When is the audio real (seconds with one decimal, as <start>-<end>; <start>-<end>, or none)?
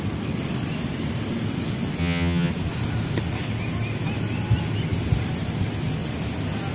0.0-2.0; 2.5-6.7